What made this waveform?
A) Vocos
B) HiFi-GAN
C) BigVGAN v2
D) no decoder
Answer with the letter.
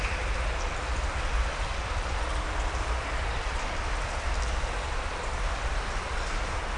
C